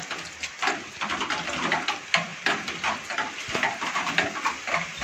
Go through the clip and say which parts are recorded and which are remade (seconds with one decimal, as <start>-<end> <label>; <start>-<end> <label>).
0.0-5.0 recorded